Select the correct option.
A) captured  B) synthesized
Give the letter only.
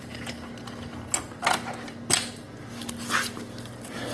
A